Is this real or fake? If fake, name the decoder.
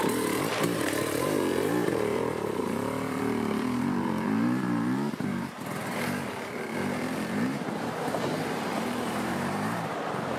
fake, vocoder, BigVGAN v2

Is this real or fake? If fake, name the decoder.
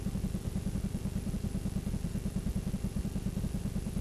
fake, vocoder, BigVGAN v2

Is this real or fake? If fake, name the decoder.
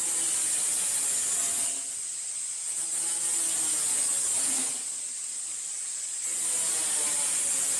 real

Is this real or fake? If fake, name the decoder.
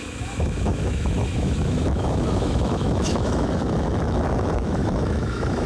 fake, autoencoder, DAC-VAE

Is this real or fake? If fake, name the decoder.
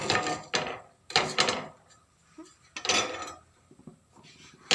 real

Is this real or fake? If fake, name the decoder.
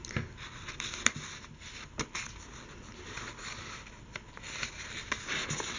real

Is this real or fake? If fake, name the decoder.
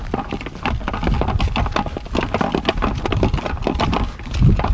real